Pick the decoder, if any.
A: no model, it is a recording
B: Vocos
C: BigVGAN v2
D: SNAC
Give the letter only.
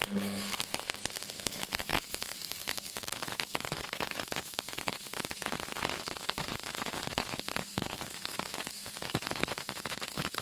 D